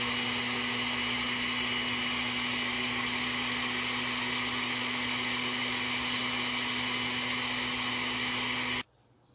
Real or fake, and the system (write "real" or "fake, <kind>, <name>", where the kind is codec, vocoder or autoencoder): real